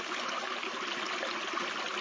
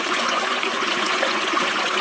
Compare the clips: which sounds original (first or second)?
first